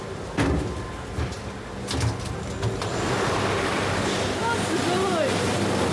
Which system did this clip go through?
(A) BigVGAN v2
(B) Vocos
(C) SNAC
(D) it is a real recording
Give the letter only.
D